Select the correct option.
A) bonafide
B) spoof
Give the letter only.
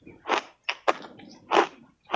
A